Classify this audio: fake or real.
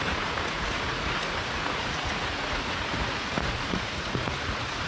fake